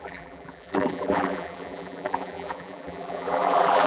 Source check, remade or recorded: remade